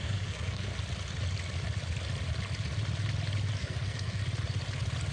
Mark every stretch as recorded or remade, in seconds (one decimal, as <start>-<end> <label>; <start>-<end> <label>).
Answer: 0.0-0.7 remade; 0.7-3.6 recorded; 3.6-4.2 remade; 4.2-5.1 recorded